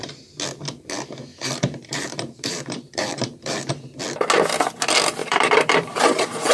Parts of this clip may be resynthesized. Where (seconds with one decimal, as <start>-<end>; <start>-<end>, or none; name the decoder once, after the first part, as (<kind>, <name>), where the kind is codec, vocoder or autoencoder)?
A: 1.3-4.0 (vocoder, BigVGAN v2); 5.2-6.5